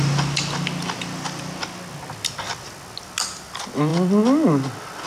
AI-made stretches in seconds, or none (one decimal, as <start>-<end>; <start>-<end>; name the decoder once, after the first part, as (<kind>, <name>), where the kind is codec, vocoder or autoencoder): none